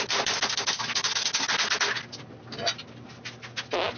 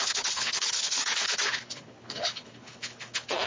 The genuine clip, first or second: first